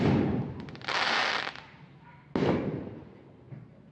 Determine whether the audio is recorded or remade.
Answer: recorded